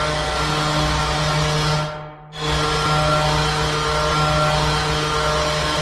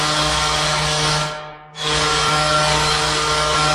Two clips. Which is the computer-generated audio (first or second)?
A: second